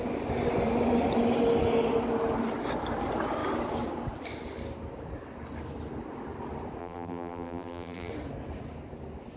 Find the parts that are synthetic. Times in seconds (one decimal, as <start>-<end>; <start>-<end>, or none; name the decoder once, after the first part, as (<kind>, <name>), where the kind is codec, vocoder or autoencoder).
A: 6.8-8.1 (vocoder, BigVGAN v2)